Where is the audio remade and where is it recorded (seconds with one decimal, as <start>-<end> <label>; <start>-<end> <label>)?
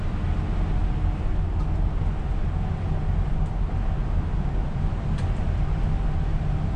0.0-6.8 recorded